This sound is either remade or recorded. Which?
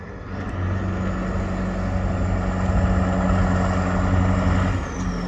recorded